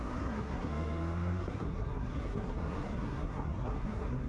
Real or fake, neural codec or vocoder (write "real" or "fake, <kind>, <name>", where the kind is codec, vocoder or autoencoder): fake, codec, SNAC